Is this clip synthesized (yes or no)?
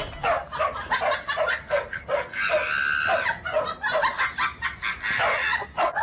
no